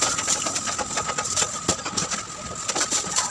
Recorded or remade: remade